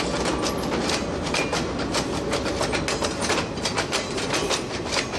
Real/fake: real